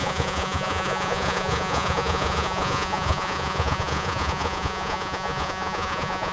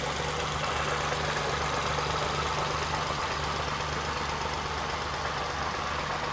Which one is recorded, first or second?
second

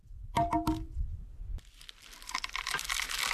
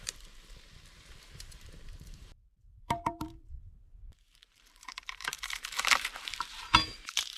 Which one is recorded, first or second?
first